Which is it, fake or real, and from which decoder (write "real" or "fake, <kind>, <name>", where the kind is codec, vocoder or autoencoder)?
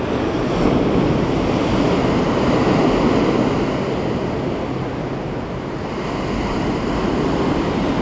real